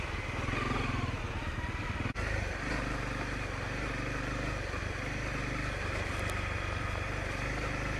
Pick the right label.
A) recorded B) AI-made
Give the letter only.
A